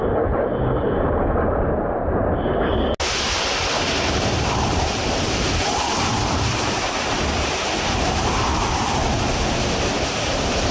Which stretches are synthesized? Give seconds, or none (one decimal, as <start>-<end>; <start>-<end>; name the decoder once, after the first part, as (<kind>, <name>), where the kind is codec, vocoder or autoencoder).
0.8-2.7 (vocoder, BigVGAN v2); 4.4-8.5; 10.0-10.7